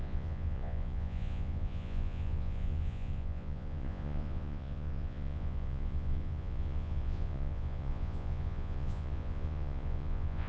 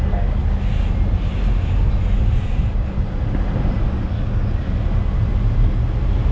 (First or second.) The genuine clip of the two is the second